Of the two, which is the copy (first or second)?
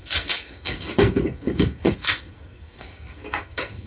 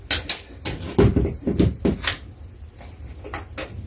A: first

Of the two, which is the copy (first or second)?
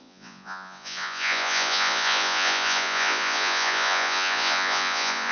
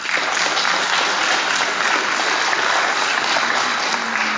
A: first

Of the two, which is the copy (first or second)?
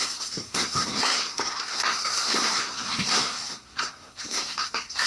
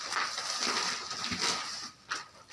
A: first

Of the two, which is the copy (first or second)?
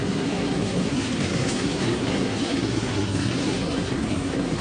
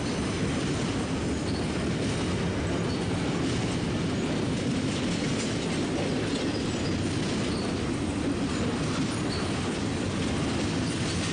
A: first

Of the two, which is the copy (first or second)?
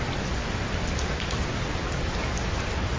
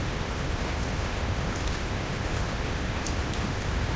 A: second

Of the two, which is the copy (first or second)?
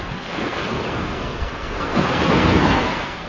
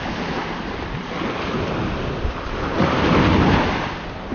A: first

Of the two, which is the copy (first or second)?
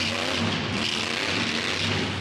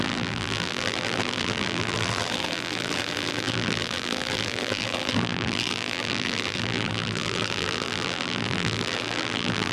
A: second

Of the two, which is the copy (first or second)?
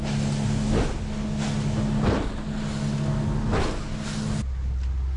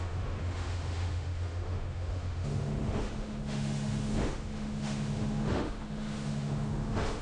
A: second